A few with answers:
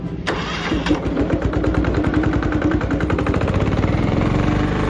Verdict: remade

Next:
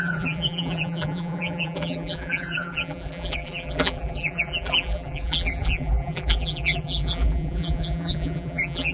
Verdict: remade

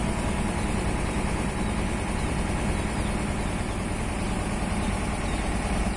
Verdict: remade